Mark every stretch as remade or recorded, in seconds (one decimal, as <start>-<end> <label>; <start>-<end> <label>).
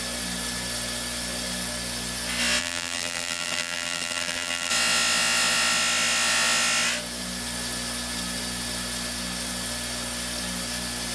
0.0-2.6 recorded; 2.6-4.7 remade; 4.7-11.1 recorded